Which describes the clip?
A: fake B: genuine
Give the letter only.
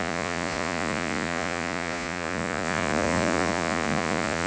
A